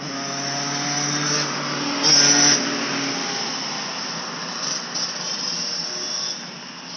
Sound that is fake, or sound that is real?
real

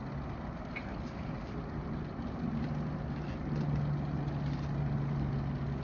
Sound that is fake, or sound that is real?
real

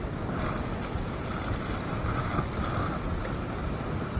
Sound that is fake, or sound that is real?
real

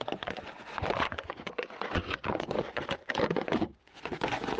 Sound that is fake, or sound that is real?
fake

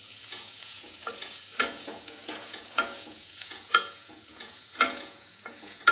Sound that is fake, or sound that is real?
fake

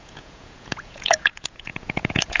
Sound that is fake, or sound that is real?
fake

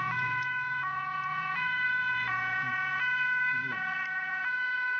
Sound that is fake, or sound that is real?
fake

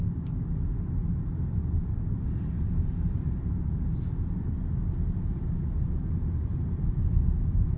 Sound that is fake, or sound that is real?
real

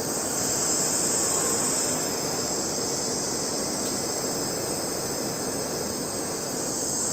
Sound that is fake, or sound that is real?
real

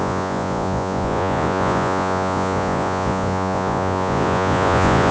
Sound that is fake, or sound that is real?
fake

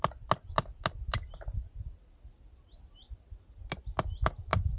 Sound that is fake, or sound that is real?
real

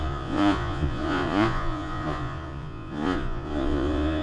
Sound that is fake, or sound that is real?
fake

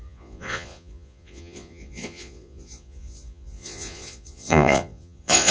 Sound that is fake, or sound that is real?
fake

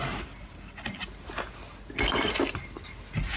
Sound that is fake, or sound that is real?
real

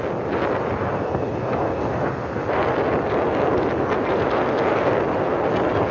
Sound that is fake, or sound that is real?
real